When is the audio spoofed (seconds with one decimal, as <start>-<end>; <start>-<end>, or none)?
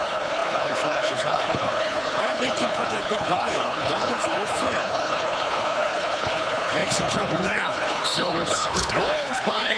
0.0-9.8